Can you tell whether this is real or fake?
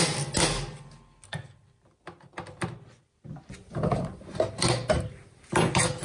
real